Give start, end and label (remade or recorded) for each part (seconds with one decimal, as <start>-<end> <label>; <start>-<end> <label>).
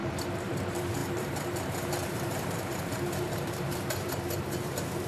0.0-5.1 remade